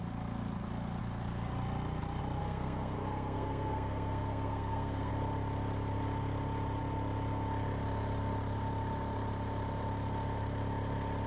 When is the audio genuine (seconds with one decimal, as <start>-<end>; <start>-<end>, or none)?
0.0-2.4; 5.1-11.3

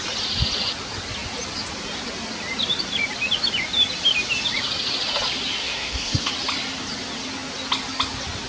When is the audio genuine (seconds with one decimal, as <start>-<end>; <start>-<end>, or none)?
0.0-5.6; 6.3-8.5